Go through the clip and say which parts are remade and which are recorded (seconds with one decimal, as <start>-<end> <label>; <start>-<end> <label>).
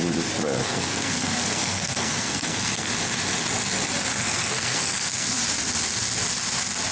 0.0-0.6 recorded; 0.6-2.9 remade; 2.9-4.1 recorded; 4.1-5.4 remade; 5.4-6.9 recorded